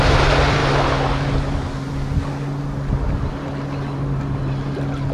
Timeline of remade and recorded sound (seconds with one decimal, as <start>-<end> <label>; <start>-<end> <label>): 0.0-5.1 recorded